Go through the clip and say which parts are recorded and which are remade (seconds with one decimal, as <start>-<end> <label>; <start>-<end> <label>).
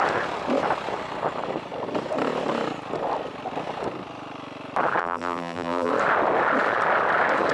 0.0-5.0 recorded; 5.0-5.9 remade; 5.9-7.5 recorded